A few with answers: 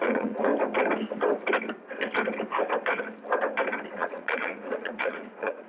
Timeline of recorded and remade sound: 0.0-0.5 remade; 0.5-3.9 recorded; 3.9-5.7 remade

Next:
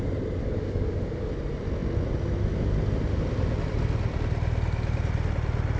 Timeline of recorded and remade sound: 0.0-0.4 recorded; 0.4-1.3 remade; 1.3-5.8 recorded